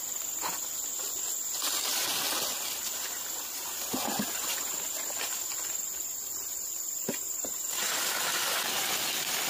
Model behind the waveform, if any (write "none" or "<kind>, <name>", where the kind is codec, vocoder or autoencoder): none